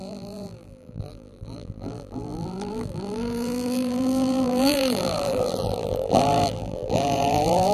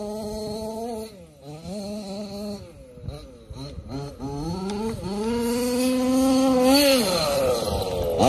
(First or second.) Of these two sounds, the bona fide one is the second